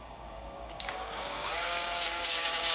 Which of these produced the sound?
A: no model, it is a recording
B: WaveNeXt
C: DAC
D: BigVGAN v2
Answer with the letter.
C